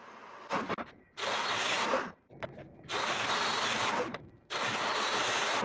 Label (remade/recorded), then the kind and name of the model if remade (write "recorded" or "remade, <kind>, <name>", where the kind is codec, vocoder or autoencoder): remade, vocoder, BigVGAN v2